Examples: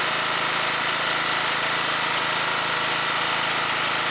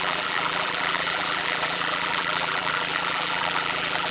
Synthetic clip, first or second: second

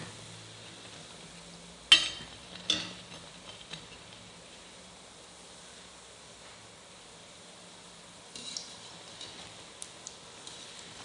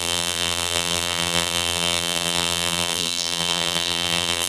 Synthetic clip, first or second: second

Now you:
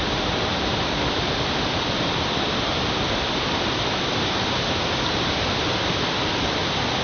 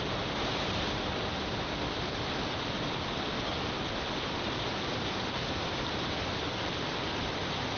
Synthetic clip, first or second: first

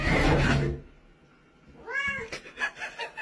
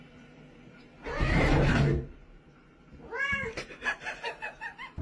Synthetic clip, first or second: second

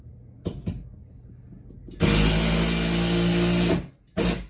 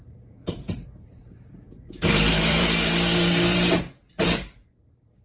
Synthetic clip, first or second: second